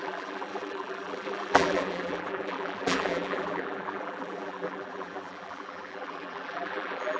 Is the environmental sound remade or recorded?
remade